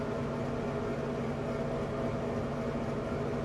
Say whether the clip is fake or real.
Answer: real